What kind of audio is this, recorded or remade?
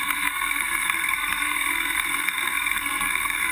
remade